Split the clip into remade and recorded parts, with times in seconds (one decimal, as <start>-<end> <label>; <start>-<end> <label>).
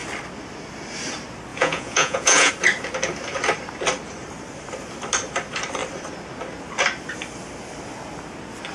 0.0-1.5 recorded; 1.5-2.5 remade; 2.5-8.7 recorded